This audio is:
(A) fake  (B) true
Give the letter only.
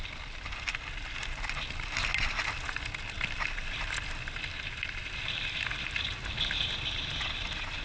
B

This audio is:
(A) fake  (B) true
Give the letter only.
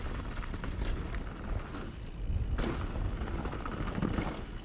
B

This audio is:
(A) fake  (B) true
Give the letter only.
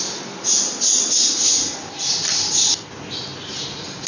B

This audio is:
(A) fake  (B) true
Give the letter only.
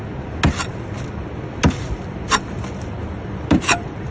B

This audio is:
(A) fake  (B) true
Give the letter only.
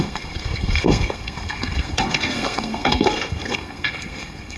A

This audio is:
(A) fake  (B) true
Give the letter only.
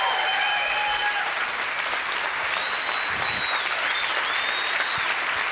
B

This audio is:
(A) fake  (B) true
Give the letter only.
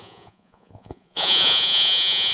A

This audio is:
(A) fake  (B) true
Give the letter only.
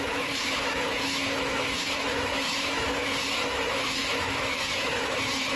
A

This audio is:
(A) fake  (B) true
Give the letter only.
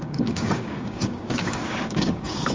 A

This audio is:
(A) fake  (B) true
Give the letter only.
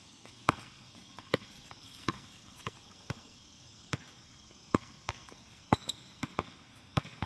A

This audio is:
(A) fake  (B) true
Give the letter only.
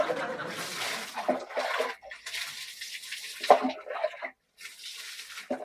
B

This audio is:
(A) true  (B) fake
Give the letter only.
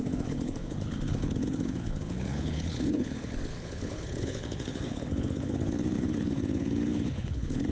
B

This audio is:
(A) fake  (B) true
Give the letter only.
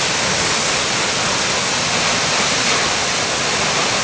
B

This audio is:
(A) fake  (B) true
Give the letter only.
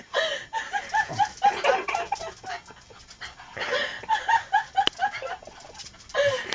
B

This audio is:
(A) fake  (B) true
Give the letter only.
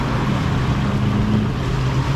B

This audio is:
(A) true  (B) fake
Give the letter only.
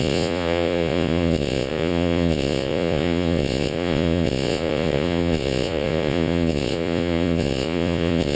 B